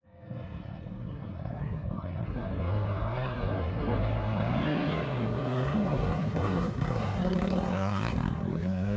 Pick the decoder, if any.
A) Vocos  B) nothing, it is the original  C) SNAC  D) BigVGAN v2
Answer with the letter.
C